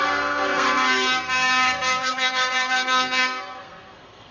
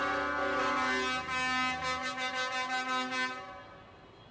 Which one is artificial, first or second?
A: first